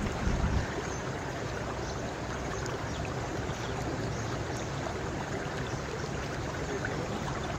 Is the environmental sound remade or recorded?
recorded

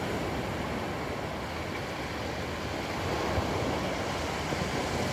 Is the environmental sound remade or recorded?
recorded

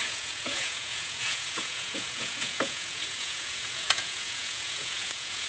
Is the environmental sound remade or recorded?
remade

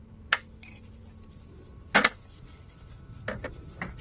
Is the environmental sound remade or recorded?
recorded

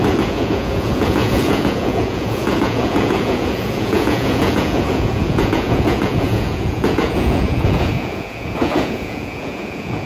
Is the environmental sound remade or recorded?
remade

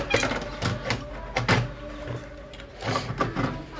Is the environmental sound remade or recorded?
recorded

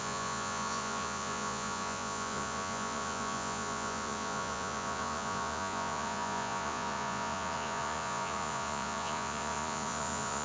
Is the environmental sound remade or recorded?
remade